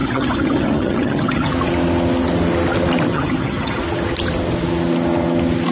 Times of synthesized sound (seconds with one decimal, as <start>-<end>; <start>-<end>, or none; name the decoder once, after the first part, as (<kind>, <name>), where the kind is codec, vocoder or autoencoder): 0.0-1.5 (vocoder, HiFi-GAN); 3.1-3.8

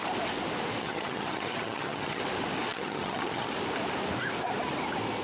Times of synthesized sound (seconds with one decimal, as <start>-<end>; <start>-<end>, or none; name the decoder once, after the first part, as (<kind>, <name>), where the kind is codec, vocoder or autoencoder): 0.8-2.2 (vocoder, HiFi-GAN); 2.7-3.5